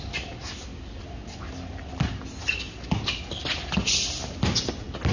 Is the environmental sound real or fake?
real